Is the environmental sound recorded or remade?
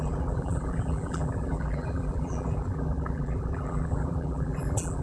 remade